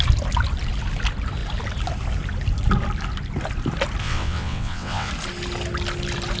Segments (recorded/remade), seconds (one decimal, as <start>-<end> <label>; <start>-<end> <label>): 0.0-4.0 recorded; 4.0-5.1 remade; 5.1-6.4 recorded